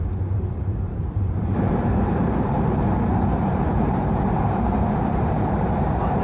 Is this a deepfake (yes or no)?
yes